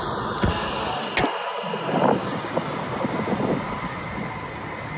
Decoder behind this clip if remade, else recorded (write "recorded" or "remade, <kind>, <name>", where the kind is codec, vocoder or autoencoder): recorded